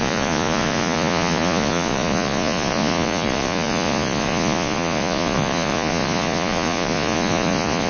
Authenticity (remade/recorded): remade